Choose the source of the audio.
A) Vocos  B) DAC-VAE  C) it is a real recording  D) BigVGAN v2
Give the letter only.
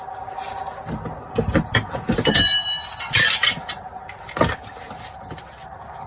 C